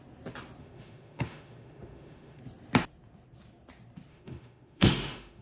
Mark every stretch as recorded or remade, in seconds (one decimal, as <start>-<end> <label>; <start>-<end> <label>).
0.0-0.6 recorded; 0.6-2.4 remade; 2.4-4.1 recorded; 4.1-5.4 remade